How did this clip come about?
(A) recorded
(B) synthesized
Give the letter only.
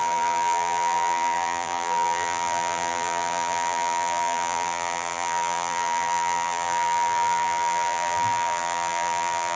B